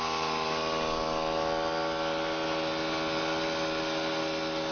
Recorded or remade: recorded